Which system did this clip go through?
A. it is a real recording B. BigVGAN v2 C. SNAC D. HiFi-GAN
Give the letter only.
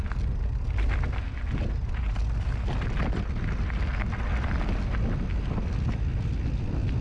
A